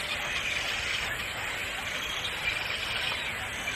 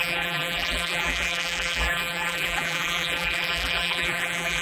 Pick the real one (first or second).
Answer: first